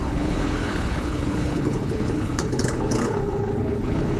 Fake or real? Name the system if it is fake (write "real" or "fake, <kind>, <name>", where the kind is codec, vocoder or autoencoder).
fake, codec, HILCodec